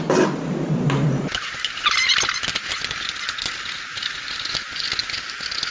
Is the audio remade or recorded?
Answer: recorded